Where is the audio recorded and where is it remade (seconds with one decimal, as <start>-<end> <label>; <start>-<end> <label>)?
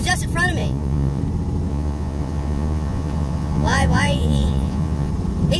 0.0-0.6 recorded; 0.6-1.2 remade; 1.2-1.7 recorded; 1.7-5.1 remade; 5.1-5.6 recorded